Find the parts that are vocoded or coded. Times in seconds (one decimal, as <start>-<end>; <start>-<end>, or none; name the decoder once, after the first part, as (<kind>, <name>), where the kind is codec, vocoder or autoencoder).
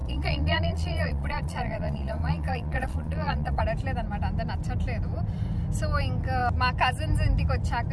0.0-3.6 (vocoder, Vocos)